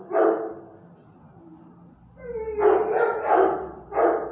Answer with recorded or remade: recorded